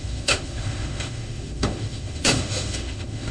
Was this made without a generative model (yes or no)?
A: no